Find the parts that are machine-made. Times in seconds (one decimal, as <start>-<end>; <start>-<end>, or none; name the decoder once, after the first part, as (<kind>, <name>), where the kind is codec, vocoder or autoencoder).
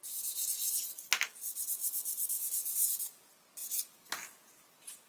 1.8-2.4 (codec, SNAC)